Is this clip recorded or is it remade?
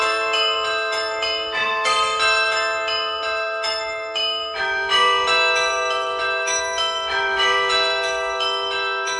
remade